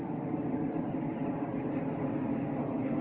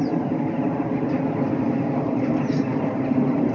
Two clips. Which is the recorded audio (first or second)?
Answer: first